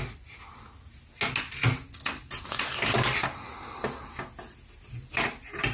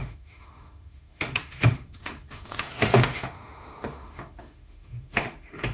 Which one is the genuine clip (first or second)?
first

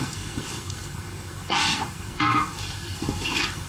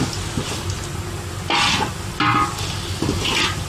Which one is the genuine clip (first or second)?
second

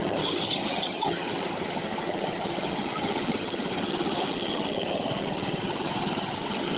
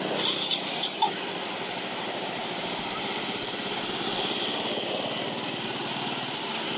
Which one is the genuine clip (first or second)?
second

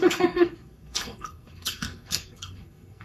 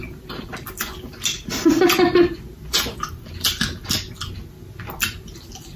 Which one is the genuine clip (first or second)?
second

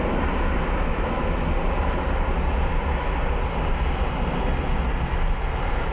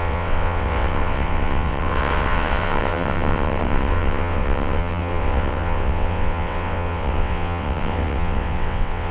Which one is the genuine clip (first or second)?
first